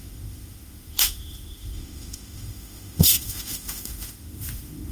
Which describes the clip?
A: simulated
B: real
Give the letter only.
A